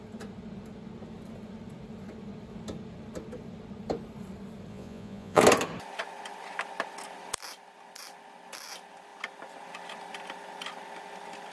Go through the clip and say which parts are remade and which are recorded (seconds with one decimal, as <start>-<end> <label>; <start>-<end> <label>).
0.0-4.7 recorded; 4.7-5.4 remade; 5.4-11.5 recorded